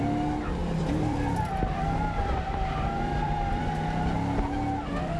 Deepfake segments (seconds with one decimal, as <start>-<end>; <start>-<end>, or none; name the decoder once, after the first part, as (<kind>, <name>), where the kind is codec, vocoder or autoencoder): 0.6-3.7 (vocoder, BigVGAN v2)